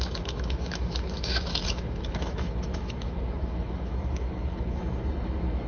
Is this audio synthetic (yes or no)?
yes